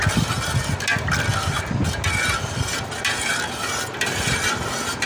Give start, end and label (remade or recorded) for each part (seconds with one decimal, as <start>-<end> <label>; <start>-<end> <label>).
0.0-5.1 recorded